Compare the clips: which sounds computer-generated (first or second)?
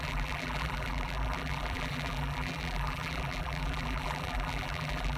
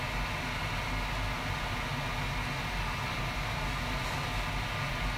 first